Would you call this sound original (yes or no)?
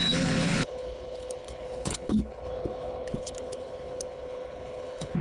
no